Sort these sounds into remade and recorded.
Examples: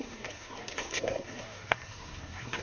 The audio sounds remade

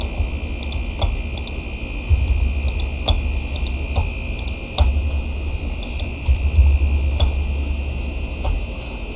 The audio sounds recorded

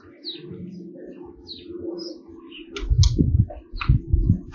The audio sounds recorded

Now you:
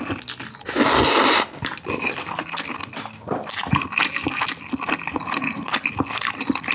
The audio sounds recorded